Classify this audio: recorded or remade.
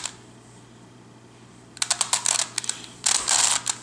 recorded